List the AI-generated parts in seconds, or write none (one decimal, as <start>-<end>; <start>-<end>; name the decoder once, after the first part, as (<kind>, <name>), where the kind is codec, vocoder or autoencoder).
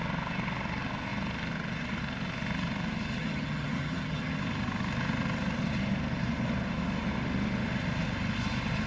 3.2-4.4 (vocoder, HiFi-GAN)